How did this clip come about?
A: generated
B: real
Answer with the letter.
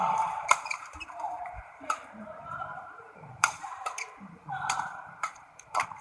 A